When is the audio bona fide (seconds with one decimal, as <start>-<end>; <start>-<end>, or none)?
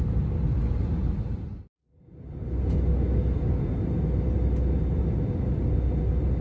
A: 0.0-2.9; 3.6-6.4